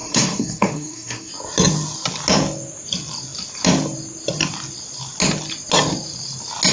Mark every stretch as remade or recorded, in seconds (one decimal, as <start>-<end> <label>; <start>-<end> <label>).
0.0-1.3 remade; 1.3-6.7 recorded